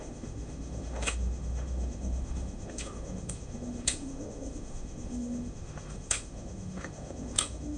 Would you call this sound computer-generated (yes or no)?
yes